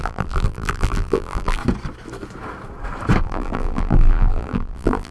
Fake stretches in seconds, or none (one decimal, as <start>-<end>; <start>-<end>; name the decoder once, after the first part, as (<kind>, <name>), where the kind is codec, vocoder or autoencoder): 0.0-1.6 (vocoder, BigVGAN v2); 3.2-5.1